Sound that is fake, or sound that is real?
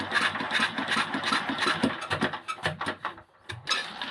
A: real